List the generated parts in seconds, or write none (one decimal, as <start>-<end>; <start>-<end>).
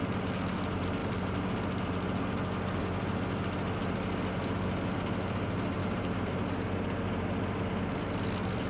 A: 5.8-6.3